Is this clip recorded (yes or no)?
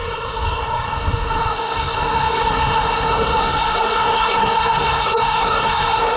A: no